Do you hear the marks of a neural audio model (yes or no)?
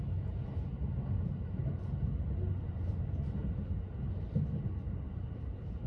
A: no